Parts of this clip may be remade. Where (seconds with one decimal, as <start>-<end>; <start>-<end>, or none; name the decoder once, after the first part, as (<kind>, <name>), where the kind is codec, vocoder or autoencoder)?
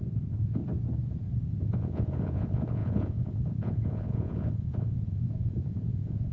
0.0-0.6 (vocoder, Vocos); 1.6-6.3